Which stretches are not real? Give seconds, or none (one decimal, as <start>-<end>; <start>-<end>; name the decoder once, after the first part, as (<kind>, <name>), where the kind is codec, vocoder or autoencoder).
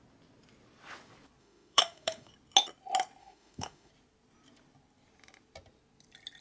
1.4-2.3 (autoencoder, DAC-VAE); 3.2-3.9